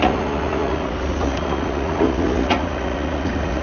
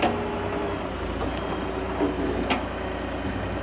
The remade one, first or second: first